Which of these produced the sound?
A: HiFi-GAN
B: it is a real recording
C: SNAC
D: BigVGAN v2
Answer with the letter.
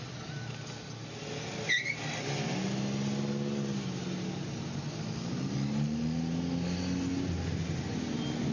B